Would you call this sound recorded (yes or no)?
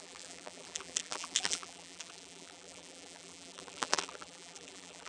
no